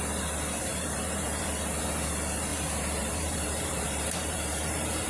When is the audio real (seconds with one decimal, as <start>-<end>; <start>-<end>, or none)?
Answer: 0.0-0.7; 1.5-2.5